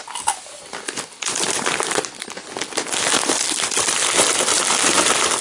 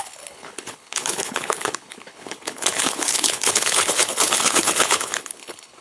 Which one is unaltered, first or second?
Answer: first